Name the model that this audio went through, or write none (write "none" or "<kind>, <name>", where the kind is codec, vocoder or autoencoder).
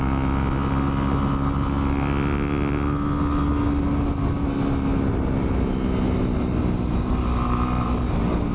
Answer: none